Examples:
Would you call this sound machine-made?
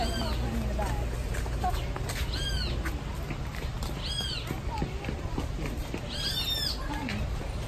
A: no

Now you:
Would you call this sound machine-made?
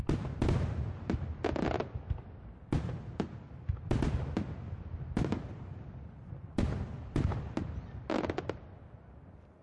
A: no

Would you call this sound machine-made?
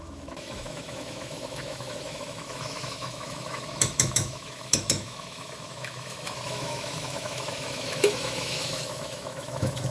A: yes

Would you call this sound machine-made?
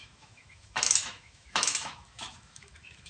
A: yes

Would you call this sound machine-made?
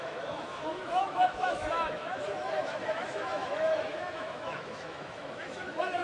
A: yes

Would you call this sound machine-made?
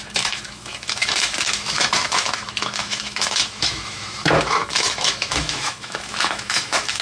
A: yes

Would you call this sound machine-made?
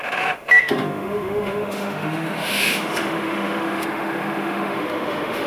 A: yes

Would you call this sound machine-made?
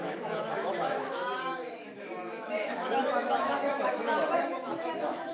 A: yes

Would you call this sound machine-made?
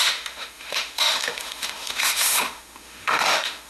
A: yes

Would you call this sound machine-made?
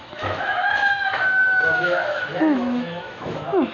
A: yes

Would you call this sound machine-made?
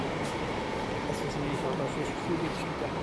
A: no